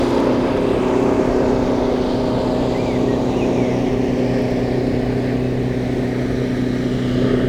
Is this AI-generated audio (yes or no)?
no